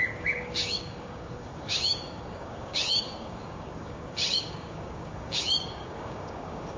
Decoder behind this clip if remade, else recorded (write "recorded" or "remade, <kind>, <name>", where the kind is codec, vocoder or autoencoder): remade, codec, DAC